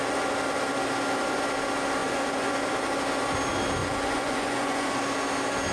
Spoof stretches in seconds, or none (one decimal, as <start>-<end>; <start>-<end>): 2.0-2.6; 3.8-4.9